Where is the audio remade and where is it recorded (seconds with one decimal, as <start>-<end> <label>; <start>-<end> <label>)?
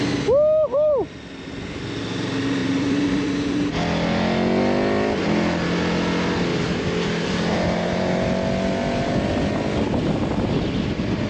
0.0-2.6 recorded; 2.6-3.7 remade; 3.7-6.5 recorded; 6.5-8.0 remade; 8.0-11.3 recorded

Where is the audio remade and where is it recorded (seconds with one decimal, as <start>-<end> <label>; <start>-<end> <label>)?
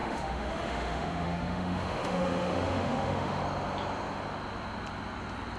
0.0-3.4 remade; 3.4-5.6 recorded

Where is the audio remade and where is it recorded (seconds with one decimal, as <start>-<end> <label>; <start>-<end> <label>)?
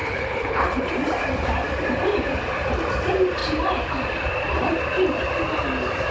0.0-0.9 remade; 0.9-6.1 recorded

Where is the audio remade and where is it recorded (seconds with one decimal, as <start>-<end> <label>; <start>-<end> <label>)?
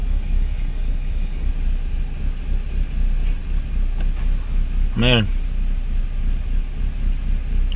0.0-1.5 remade; 1.5-7.8 recorded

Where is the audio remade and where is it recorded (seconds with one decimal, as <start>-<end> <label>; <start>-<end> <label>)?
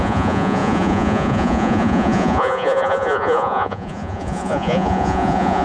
0.0-5.6 remade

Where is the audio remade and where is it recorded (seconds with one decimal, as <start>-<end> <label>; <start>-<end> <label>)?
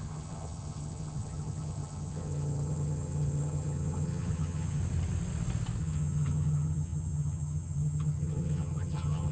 0.0-4.8 remade; 4.8-5.8 recorded; 5.8-9.3 remade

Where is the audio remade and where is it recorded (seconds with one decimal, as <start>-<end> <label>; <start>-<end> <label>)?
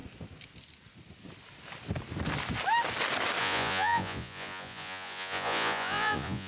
0.0-3.4 recorded; 3.4-6.5 remade